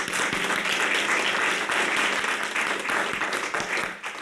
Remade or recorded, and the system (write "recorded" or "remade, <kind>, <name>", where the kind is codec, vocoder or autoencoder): recorded